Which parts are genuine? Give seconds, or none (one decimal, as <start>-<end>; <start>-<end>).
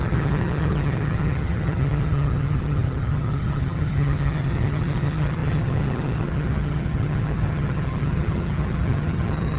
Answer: none